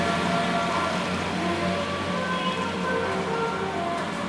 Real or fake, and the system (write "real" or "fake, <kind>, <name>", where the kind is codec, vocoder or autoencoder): real